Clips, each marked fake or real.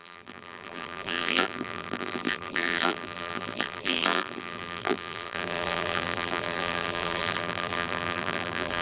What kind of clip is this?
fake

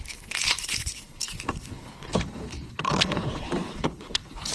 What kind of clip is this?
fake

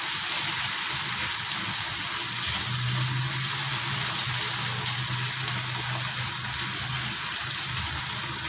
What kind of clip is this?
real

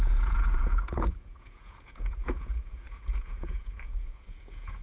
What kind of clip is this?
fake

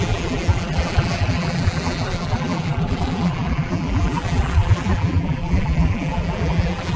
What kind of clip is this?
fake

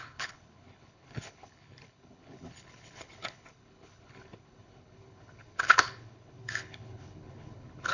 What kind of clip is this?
fake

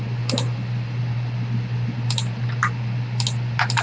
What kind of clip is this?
real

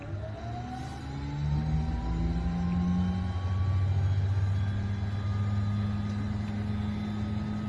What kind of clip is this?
real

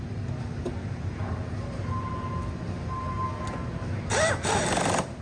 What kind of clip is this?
real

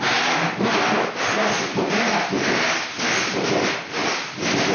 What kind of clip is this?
real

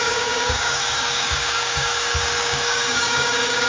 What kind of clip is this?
fake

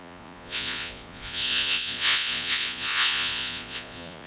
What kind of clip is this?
fake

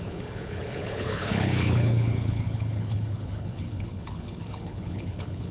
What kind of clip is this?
fake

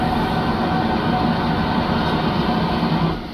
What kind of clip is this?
real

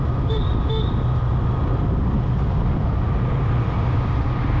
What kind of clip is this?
real